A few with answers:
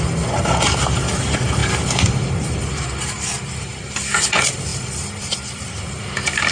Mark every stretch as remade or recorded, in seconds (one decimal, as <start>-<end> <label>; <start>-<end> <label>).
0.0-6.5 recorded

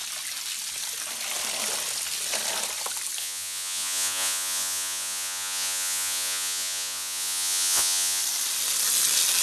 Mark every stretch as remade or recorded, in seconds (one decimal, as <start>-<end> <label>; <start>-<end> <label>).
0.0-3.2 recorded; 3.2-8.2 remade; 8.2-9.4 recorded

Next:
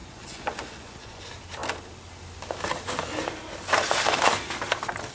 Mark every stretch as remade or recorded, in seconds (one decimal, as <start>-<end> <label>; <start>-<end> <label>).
0.0-1.2 remade; 1.2-5.1 recorded

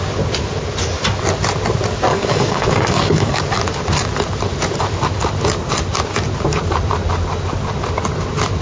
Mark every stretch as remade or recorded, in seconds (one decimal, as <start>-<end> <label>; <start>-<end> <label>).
0.0-2.1 recorded; 2.1-3.4 remade; 3.4-8.6 recorded